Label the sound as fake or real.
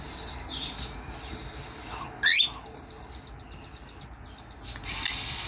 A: real